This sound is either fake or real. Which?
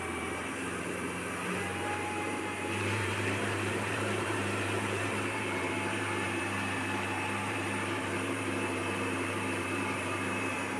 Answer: fake